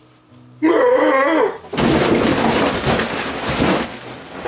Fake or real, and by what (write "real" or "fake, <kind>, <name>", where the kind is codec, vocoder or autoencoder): real